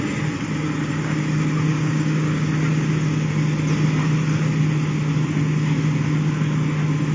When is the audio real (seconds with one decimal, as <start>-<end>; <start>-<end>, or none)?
0.0-1.7; 2.5-7.1